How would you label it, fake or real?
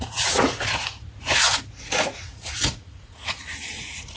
fake